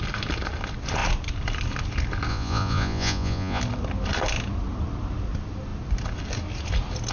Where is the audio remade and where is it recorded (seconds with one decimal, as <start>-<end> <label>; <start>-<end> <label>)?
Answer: 0.0-2.3 recorded; 2.3-3.6 remade; 3.6-7.1 recorded